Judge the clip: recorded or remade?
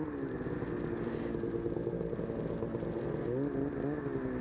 recorded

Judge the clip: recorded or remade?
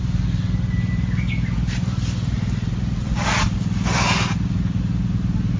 recorded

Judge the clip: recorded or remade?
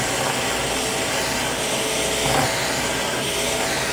recorded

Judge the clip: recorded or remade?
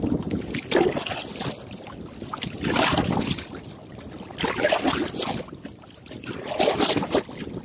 recorded